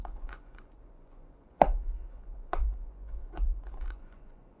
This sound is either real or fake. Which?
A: fake